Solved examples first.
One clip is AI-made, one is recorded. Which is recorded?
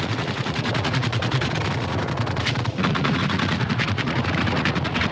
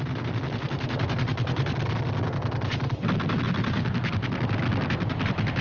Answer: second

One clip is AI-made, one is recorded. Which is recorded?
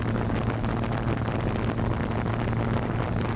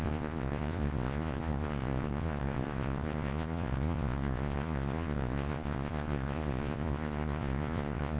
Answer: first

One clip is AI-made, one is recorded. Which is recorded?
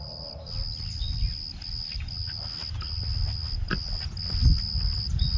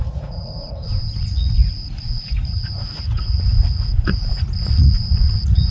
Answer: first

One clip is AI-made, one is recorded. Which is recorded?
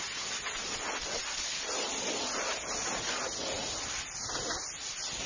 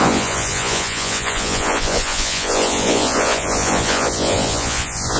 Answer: first